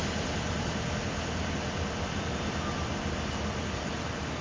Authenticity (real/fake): real